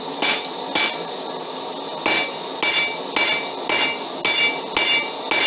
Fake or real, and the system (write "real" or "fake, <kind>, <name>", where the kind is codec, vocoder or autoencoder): real